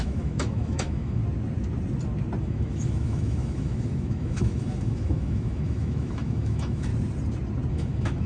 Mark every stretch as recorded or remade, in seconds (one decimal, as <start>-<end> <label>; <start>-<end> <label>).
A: 0.0-1.2 remade; 1.2-2.4 recorded; 2.4-6.9 remade; 6.9-7.7 recorded; 7.7-8.3 remade